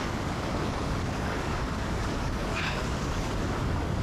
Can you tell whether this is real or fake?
fake